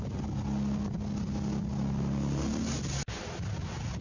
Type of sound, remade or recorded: recorded